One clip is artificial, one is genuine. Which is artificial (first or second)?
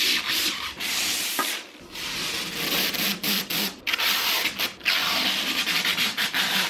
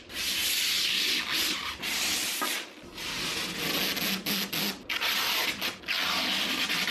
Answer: first